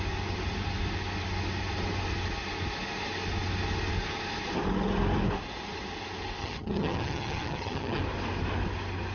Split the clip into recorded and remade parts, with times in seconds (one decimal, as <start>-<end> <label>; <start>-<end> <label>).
0.0-6.4 recorded; 6.4-8.0 remade; 8.0-9.1 recorded